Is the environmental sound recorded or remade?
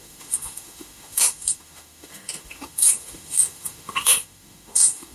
remade